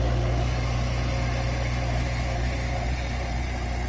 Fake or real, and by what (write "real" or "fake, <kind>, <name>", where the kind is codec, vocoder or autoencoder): real